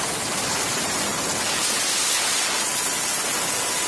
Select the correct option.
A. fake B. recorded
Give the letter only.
B